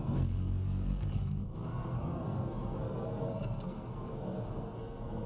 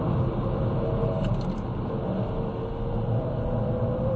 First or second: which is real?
second